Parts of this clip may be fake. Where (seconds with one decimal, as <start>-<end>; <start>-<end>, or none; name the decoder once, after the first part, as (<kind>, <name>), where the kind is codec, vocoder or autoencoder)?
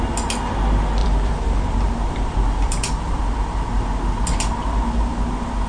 1.0-3.2 (vocoder, BigVGAN v2)